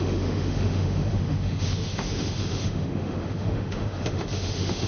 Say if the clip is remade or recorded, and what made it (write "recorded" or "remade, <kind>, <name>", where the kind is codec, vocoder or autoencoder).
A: remade, autoencoder, DAC-VAE